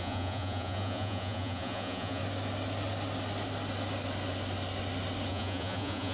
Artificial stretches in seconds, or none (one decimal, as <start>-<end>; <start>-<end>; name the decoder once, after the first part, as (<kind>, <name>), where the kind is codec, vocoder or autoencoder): 0.0-2.2 (vocoder, Vocos); 5.3-6.1